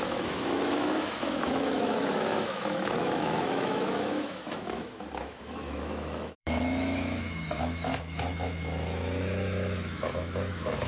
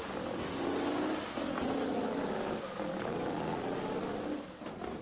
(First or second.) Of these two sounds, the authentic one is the second